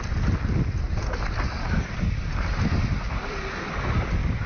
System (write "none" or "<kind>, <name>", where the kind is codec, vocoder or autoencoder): none